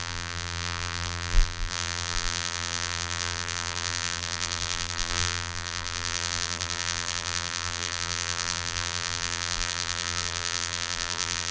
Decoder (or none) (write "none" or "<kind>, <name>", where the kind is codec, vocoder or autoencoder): vocoder, BigVGAN v2